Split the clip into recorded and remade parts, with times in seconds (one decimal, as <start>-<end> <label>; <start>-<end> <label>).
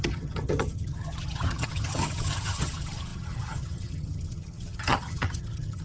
0.0-5.8 remade